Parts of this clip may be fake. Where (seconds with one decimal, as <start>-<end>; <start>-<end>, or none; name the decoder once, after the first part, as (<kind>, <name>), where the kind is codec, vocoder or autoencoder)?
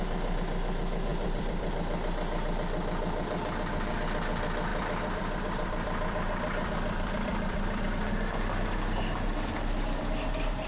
1.1-1.7 (vocoder, BigVGAN v2); 4.7-7.9